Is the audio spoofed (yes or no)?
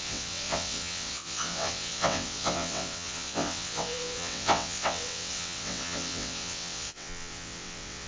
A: yes